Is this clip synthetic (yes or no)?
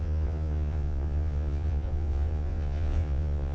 yes